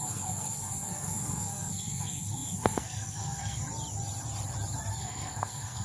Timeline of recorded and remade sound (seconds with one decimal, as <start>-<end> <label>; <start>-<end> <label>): 0.0-3.6 remade; 3.6-4.9 recorded; 4.9-5.8 remade